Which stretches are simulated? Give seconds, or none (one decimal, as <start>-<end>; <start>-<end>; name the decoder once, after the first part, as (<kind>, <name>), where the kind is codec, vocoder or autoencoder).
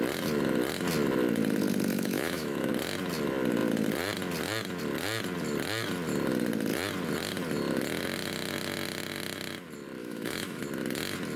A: 1.9-2.7 (autoencoder, DAC-VAE); 10.0-10.6